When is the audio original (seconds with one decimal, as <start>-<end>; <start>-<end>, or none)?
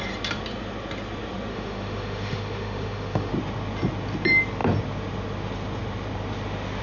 0.0-1.5; 3.3-6.8